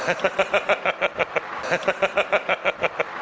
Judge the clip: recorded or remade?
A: recorded